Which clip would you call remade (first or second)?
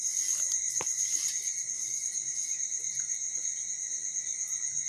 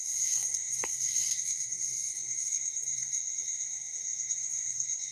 second